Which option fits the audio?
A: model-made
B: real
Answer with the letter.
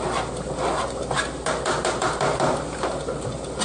B